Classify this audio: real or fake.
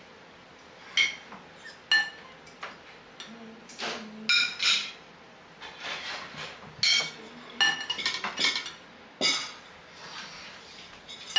real